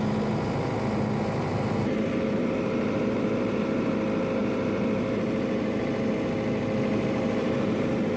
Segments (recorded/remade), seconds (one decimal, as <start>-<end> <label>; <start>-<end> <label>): 0.0-1.4 recorded; 1.4-3.9 remade; 3.9-4.4 recorded; 4.4-6.1 remade; 6.1-6.9 recorded; 6.9-8.2 remade